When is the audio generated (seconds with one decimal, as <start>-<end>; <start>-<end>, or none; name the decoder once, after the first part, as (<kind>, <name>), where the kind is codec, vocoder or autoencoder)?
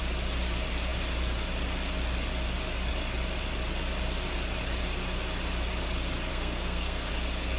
6.3-7.1 (codec, SNAC)